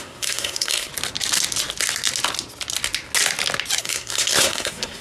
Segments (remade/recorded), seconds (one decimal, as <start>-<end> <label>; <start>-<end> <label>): 0.0-0.9 remade; 0.9-3.8 recorded; 3.8-5.0 remade